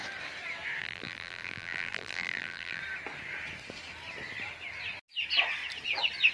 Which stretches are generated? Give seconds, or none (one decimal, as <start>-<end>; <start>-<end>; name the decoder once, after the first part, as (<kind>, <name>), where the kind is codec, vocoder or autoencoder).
0.8-2.8 (vocoder, BigVGAN v2)